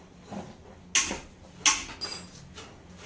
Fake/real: real